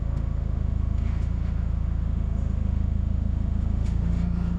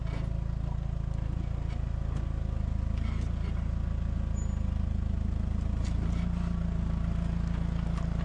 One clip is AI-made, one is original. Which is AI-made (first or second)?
first